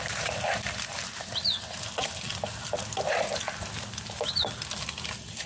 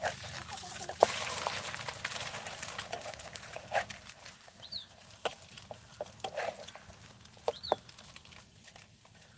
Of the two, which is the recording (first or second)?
first